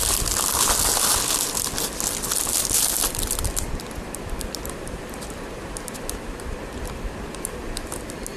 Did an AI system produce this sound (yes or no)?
no